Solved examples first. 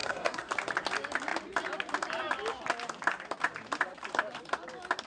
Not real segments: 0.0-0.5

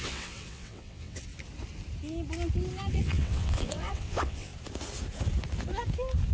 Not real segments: 0.0-1.3; 2.9-4.5

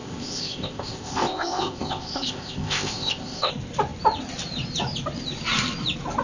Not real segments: 0.0-3.5

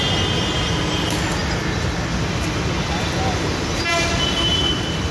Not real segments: none